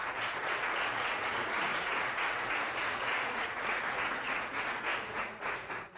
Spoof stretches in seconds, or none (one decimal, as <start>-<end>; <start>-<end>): 0.0-6.0